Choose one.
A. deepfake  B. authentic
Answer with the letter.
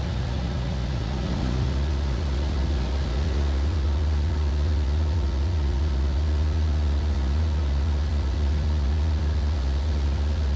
A